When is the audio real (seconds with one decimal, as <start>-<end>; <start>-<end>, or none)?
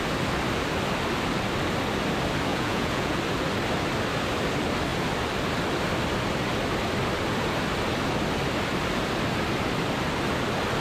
0.0-2.5; 3.2-10.8